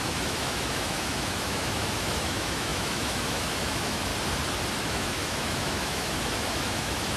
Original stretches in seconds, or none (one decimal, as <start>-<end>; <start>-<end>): 4.1-4.8